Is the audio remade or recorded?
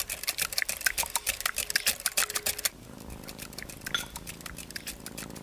recorded